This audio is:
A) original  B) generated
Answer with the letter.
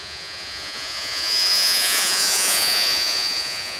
B